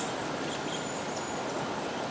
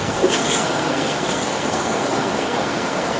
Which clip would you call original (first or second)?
first